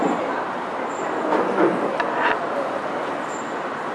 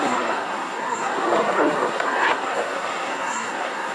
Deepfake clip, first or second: second